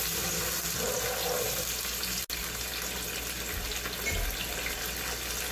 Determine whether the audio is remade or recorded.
recorded